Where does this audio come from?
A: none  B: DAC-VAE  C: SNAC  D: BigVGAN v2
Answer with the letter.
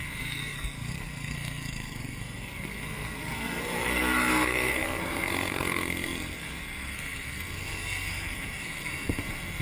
C